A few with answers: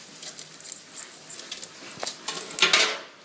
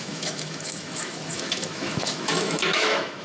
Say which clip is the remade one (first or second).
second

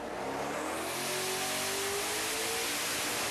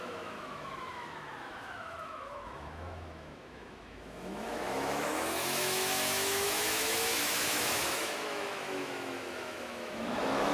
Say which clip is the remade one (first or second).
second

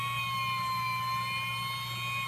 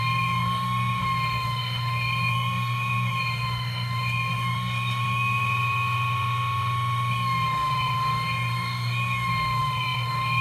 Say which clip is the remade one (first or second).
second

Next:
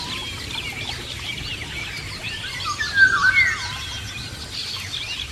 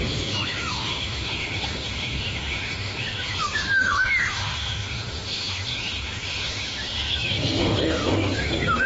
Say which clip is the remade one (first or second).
second